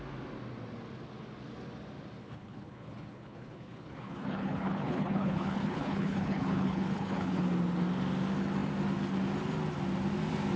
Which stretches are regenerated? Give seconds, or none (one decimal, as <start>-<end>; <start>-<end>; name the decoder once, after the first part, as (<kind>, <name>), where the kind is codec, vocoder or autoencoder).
2.2-7.4 (codec, HILCodec)